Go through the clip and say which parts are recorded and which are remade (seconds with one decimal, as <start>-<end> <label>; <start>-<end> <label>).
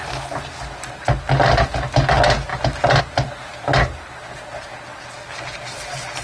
0.0-6.2 recorded